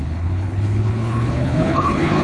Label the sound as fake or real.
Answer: fake